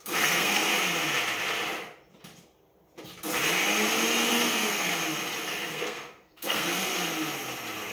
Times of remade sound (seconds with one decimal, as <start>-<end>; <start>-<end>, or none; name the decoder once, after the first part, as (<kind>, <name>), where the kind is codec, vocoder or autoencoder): 0.0-0.7 (codec, SNAC); 4.3-4.9; 5.4-6.9